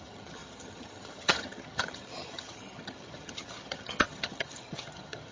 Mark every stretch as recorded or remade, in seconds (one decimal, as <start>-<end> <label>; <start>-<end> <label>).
0.0-5.3 remade